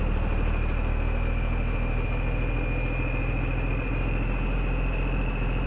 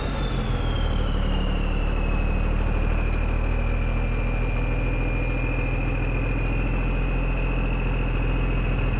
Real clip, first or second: second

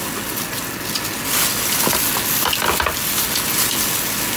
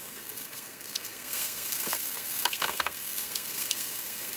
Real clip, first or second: first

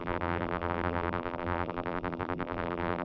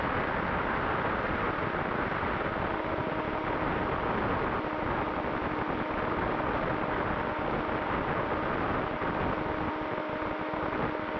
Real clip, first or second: second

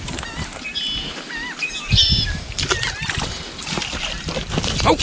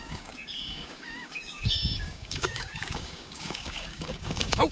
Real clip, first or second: first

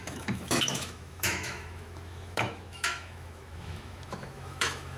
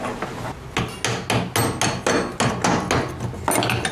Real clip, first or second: second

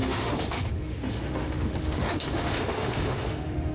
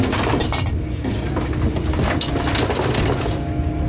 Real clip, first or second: second